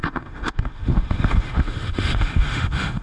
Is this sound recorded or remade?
remade